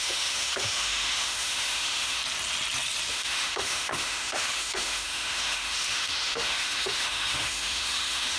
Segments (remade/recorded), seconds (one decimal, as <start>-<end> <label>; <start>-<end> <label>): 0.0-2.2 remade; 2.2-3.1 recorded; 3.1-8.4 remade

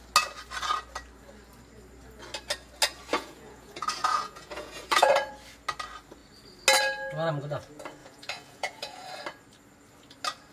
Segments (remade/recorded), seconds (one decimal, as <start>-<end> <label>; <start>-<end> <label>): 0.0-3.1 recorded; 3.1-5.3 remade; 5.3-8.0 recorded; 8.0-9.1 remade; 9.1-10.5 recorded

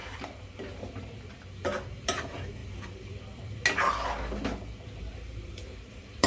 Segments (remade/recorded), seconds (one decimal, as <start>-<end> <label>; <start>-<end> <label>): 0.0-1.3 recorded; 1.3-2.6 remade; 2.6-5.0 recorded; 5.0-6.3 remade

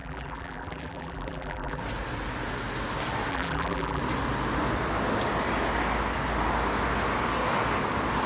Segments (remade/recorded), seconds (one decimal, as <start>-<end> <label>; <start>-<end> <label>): 0.0-1.8 remade; 1.8-3.3 recorded; 3.3-4.0 remade; 4.0-8.3 recorded